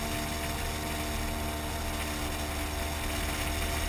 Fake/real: real